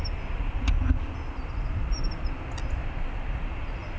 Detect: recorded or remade recorded